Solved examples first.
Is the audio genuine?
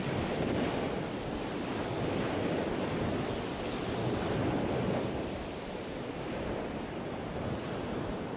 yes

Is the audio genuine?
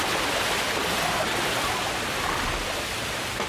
yes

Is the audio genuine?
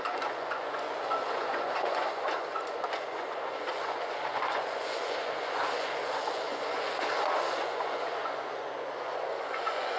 no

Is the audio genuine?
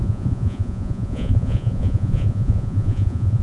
no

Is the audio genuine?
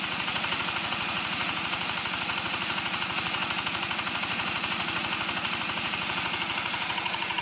no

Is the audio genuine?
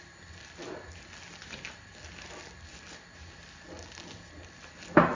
yes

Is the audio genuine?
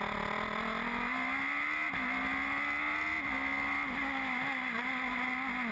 yes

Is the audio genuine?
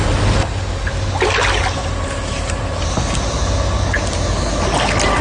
yes